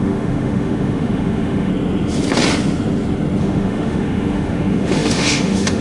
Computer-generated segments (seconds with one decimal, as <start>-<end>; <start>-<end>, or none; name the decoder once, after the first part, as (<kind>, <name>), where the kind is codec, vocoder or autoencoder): 0.0-1.7 (autoencoder, DAC-VAE); 3.4-5.8